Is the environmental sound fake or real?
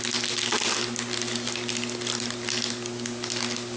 real